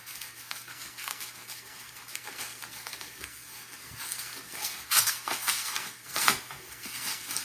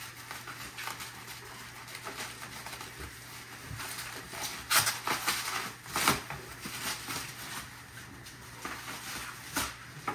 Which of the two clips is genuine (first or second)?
second